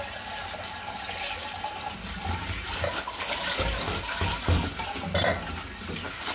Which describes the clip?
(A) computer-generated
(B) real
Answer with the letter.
B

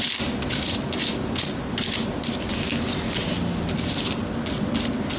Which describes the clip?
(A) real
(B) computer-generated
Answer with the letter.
A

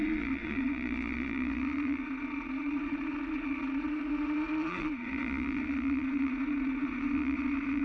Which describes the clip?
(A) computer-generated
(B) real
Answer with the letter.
A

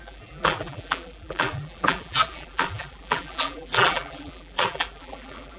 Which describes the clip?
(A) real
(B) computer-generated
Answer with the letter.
B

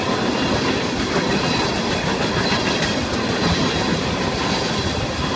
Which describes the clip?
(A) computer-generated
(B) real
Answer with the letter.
B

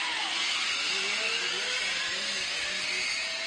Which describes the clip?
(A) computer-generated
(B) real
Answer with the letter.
B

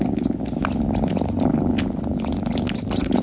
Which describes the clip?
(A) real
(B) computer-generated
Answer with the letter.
A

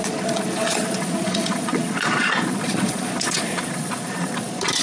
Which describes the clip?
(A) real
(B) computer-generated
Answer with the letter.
B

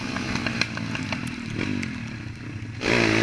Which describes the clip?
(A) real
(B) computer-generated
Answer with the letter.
A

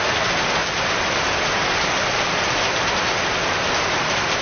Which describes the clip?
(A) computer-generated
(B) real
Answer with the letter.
B